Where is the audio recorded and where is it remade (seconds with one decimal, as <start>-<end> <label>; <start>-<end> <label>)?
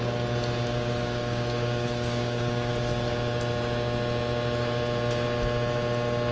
0.0-0.7 recorded; 0.7-2.7 remade; 2.7-6.3 recorded